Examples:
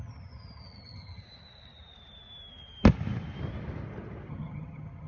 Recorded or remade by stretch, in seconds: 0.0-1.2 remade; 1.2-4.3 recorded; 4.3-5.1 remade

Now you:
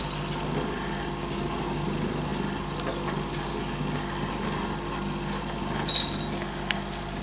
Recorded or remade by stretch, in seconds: 0.0-7.2 recorded

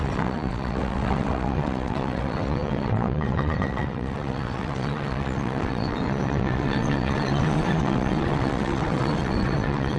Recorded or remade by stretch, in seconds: 0.0-10.0 remade

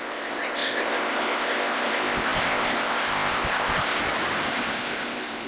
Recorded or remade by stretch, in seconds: 0.0-4.0 remade; 4.0-4.5 recorded; 4.5-5.5 remade

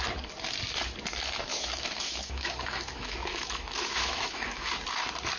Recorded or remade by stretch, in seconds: 0.0-1.5 recorded; 1.5-4.7 remade; 4.7-5.4 recorded